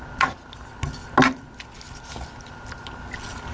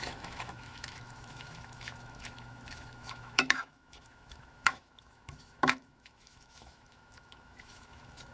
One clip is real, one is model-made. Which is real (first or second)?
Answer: first